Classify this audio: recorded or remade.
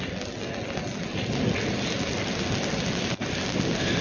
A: recorded